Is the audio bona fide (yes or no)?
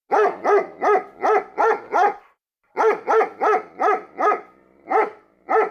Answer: yes